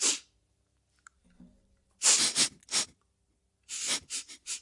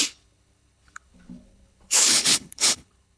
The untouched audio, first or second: first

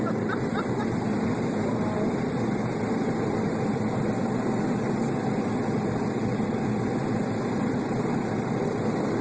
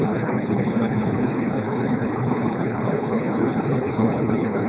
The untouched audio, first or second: first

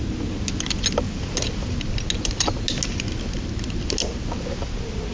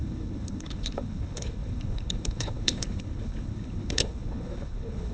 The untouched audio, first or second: first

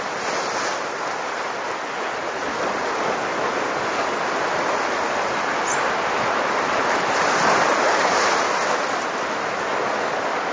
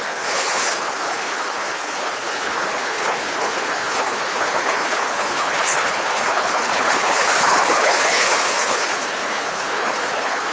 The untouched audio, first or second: first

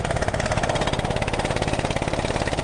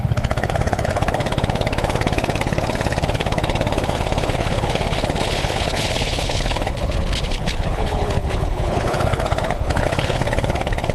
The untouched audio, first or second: first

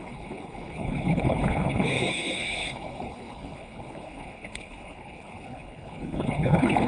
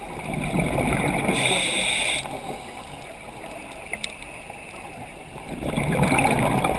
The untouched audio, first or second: second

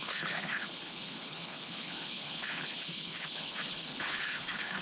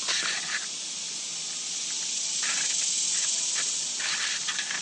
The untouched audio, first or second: second